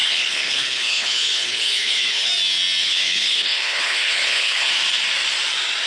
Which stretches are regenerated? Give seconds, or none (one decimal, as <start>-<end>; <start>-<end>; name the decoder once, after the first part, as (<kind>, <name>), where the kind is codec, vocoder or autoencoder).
0.0-2.3 (codec, HILCodec); 2.8-4.7